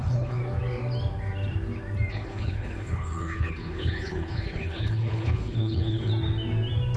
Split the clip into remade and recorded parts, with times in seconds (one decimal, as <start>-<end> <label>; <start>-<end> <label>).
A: 0.0-0.4 remade; 0.4-2.1 recorded; 2.1-6.1 remade; 6.1-7.0 recorded